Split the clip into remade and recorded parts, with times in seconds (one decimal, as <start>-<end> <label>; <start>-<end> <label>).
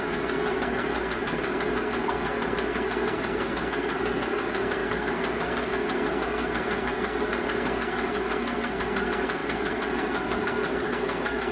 0.0-11.5 remade